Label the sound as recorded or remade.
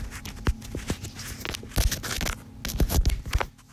recorded